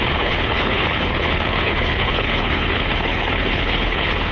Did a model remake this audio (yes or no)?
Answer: yes